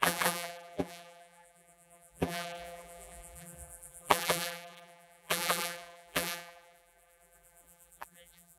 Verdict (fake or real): fake